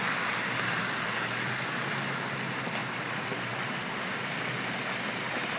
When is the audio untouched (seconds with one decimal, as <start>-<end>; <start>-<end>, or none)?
0.0-0.8; 1.9-5.6